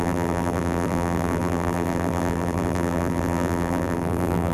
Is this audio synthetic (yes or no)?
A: yes